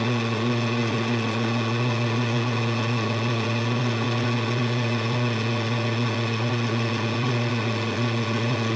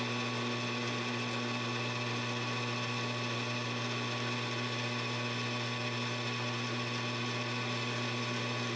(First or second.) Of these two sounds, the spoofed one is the first